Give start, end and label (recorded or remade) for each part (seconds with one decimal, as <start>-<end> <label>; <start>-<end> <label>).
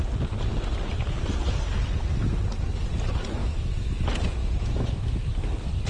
0.0-3.4 recorded; 3.4-4.0 remade; 4.0-4.4 recorded; 4.4-5.5 remade; 5.5-5.9 recorded